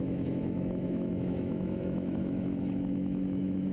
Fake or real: fake